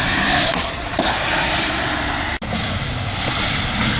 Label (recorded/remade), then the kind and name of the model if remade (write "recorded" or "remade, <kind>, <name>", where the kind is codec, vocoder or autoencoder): recorded